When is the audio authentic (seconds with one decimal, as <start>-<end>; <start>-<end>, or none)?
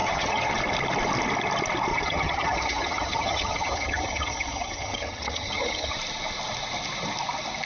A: 0.5-1.9; 5.9-7.7